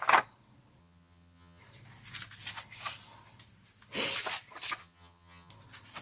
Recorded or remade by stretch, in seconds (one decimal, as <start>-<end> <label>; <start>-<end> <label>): 0.0-0.8 recorded; 0.8-1.6 remade; 1.6-4.8 recorded; 4.8-5.5 remade; 5.5-6.0 recorded